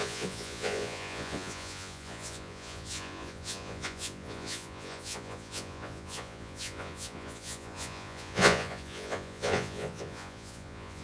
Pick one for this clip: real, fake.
fake